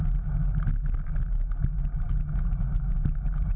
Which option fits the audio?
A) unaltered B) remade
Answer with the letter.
A